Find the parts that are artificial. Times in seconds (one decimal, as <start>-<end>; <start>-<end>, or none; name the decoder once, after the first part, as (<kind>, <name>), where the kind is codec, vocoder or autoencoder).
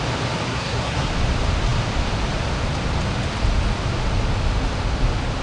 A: 0.5-1.1 (codec, SNAC)